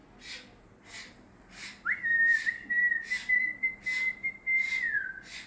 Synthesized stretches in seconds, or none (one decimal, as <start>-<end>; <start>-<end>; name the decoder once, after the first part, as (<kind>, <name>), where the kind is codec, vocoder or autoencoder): 4.6-5.5 (vocoder, Vocos)